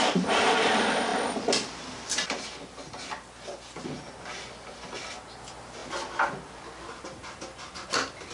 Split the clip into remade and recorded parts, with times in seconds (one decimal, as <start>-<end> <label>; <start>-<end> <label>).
0.0-8.3 recorded